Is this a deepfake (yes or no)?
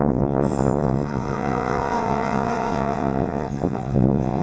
yes